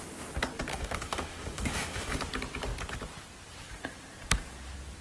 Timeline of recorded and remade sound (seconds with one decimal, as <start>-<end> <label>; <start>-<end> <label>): 0.0-0.7 recorded; 0.7-2.2 remade; 2.2-5.0 recorded